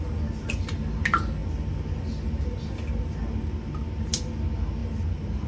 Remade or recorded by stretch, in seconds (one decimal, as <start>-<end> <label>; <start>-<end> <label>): 0.0-5.5 recorded